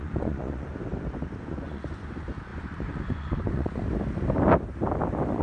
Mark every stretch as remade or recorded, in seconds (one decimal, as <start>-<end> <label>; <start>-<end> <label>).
0.0-0.7 remade; 0.7-1.4 recorded; 1.4-3.8 remade; 3.8-5.4 recorded